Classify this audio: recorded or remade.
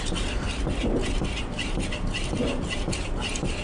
recorded